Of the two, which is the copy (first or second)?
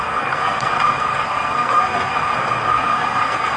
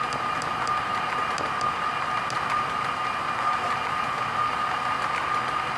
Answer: first